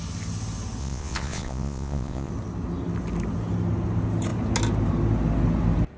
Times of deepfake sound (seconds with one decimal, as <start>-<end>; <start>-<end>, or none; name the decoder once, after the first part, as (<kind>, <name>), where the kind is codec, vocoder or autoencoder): 0.8-2.3 (vocoder, Vocos)